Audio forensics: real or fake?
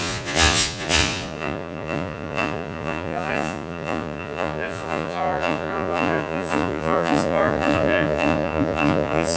fake